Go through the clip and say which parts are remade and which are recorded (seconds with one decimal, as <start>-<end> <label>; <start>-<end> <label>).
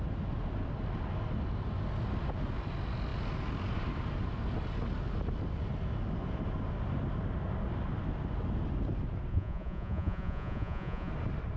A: 0.0-9.3 recorded; 9.3-11.1 remade; 11.1-11.6 recorded